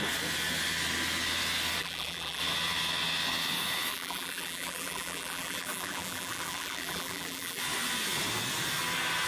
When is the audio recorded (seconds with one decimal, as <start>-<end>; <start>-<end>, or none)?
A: 0.0-1.8; 2.4-3.9; 7.6-9.3

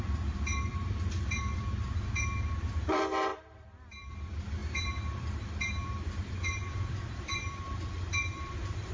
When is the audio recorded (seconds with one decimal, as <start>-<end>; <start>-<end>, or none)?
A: none

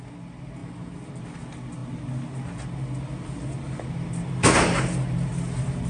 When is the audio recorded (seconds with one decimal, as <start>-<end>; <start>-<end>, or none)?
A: 0.0-5.9

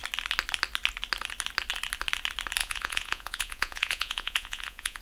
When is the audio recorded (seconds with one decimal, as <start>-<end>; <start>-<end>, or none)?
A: 0.0-2.6

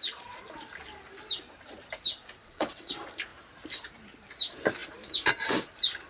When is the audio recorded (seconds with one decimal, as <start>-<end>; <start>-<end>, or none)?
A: 0.0-2.4; 2.9-6.1

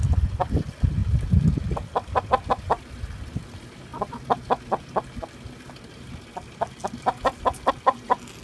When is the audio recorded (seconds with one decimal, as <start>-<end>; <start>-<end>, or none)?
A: 0.0-8.4